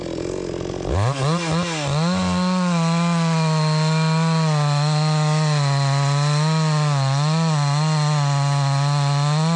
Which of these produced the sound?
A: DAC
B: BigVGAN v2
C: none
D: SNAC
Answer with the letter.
C